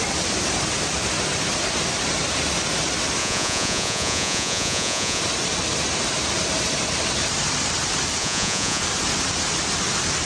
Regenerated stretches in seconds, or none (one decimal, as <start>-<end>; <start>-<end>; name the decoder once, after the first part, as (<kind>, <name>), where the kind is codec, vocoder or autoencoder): 3.2-5.2 (vocoder, Vocos); 8.2-8.8